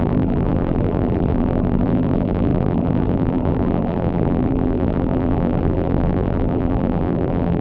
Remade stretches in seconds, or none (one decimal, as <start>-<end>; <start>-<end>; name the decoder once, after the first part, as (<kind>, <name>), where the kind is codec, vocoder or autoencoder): 0.0-7.6 (vocoder, BigVGAN v2)

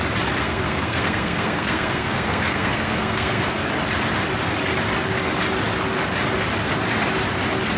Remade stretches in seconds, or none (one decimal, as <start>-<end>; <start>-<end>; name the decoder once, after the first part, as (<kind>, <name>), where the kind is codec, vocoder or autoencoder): 0.4-3.4 (codec, SNAC)

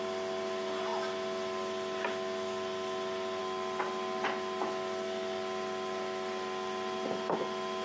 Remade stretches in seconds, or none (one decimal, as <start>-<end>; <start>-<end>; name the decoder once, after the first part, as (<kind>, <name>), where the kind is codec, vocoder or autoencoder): none

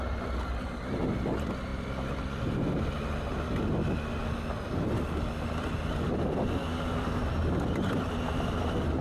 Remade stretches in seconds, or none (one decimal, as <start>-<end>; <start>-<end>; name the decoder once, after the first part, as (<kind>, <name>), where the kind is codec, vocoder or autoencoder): 6.6-7.2 (codec, DAC)